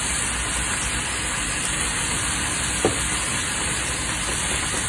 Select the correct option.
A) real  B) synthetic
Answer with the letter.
A